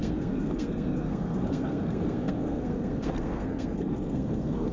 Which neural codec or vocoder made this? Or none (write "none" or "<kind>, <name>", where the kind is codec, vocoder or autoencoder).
codec, SNAC